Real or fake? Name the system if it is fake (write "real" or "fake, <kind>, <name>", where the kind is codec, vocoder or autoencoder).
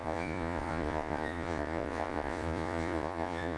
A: fake, vocoder, Vocos